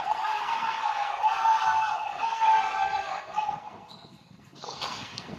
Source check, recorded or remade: remade